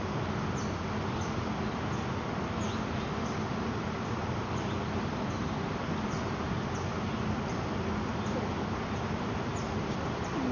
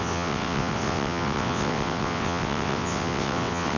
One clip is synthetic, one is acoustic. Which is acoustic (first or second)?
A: first